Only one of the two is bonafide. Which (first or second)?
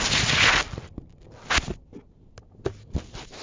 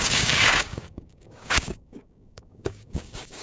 first